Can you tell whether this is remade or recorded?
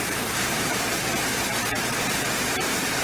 remade